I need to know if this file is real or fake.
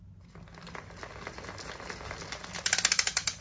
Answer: real